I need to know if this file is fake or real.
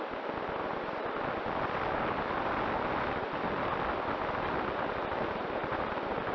real